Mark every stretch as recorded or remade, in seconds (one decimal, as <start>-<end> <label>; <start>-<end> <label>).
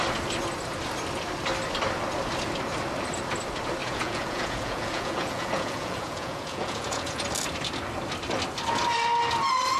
0.0-3.8 recorded; 3.8-7.2 remade; 7.2-9.8 recorded